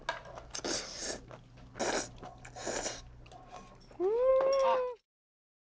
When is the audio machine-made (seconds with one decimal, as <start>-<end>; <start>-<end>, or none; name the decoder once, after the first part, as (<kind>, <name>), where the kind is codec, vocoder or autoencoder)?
none

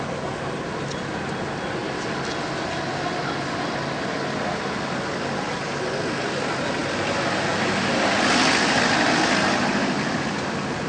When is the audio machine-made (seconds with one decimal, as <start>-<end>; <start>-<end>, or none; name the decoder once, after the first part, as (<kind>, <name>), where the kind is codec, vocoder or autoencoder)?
none

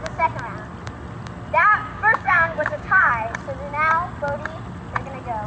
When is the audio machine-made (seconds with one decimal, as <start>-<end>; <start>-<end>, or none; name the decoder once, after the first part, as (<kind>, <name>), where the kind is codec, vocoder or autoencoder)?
1.9-3.1 (codec, DAC)

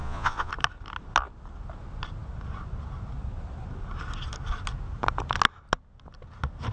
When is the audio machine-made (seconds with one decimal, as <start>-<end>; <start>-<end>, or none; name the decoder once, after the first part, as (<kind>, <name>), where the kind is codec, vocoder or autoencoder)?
0.0-0.5 (vocoder, Vocos)